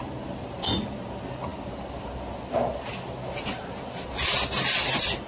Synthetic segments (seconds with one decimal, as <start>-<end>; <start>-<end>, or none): none